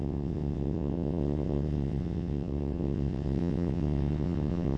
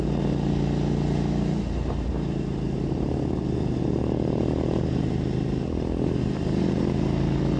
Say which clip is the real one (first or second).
second